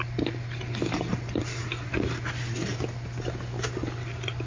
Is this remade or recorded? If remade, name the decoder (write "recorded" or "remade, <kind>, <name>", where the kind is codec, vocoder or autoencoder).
recorded